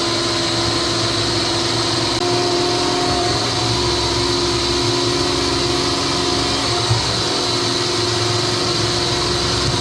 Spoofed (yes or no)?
no